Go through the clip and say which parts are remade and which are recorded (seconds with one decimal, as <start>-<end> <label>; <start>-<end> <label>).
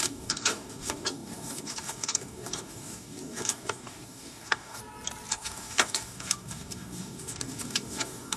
0.0-4.8 remade; 4.8-5.3 recorded; 5.3-8.4 remade